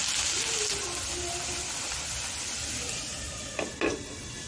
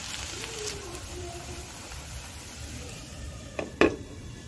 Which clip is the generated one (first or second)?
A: second